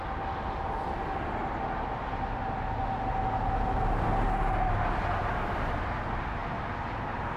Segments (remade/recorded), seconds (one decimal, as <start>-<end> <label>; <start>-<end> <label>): 0.0-7.4 recorded